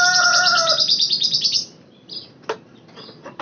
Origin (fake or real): real